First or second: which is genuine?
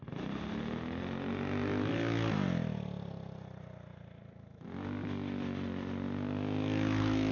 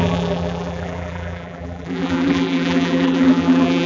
first